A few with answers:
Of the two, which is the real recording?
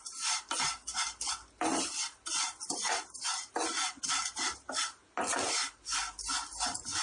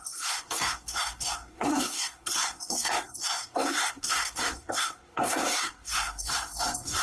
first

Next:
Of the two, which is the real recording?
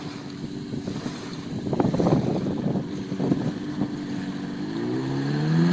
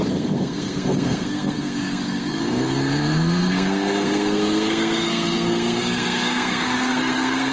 first